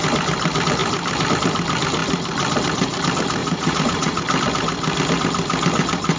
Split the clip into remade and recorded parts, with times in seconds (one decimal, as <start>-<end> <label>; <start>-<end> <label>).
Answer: 0.0-3.4 recorded; 3.4-4.2 remade; 4.2-6.2 recorded